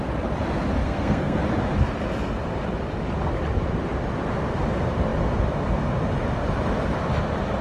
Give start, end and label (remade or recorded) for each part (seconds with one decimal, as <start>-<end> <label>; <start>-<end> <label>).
0.0-0.8 recorded; 0.8-1.4 remade; 1.4-7.6 recorded